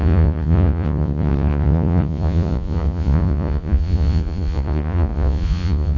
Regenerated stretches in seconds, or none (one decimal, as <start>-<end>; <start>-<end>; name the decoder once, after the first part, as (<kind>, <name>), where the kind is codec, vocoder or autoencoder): 0.0-6.0 (vocoder, Vocos)